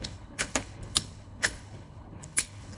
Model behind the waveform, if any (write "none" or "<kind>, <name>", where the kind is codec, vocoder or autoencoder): codec, HILCodec